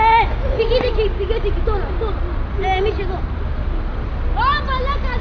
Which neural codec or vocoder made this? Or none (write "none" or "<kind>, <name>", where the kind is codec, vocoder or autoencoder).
none